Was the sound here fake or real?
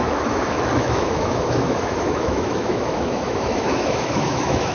fake